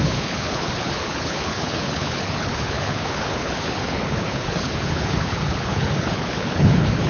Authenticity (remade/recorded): remade